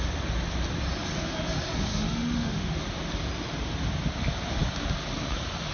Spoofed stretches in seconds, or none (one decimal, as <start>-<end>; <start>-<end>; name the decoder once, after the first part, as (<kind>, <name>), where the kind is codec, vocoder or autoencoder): 1.9-2.8 (autoencoder, DAC-VAE)